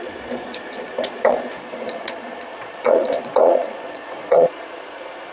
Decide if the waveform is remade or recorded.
remade